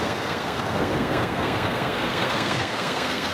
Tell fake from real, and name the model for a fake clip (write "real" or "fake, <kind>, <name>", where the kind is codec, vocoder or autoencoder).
fake, codec, SNAC